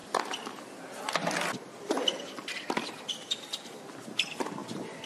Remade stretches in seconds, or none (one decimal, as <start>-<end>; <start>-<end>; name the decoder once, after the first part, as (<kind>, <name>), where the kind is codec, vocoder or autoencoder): none